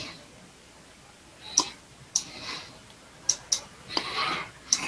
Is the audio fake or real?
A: real